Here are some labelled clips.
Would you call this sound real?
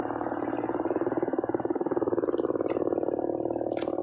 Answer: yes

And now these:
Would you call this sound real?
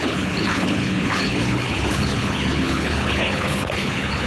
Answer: no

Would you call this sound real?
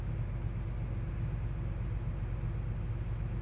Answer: yes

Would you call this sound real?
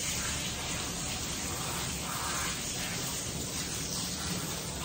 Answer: yes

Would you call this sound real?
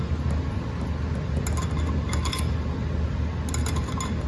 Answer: yes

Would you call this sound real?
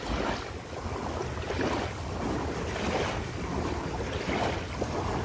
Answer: yes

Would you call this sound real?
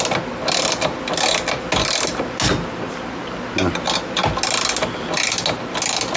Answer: yes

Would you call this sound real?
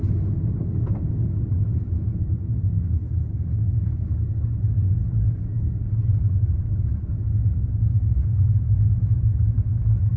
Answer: yes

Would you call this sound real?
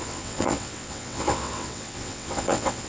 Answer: no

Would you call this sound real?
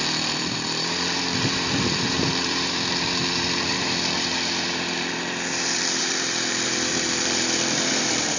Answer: no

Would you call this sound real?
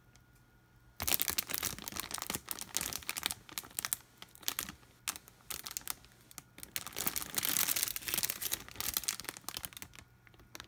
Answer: yes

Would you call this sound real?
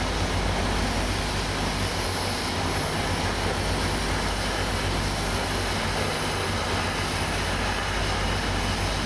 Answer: yes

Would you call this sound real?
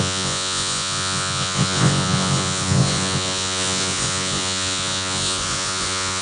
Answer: no